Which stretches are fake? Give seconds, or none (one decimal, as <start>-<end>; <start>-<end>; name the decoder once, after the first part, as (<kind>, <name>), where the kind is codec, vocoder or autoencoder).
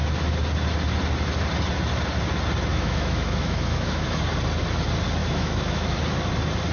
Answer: 2.7-4.2 (autoencoder, DAC-VAE); 5.2-6.0